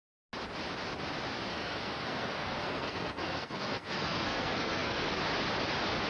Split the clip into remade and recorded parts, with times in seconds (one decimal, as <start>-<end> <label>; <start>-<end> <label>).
0.0-1.5 recorded; 1.5-5.2 remade; 5.2-6.1 recorded